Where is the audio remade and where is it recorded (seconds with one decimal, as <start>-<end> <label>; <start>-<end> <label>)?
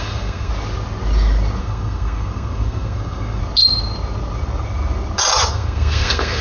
0.0-0.5 remade; 0.5-1.6 recorded; 1.6-3.4 remade; 3.4-5.5 recorded; 5.5-6.4 remade